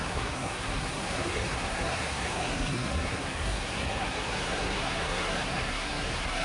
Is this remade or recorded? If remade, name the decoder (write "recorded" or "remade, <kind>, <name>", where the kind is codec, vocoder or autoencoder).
remade, codec, SNAC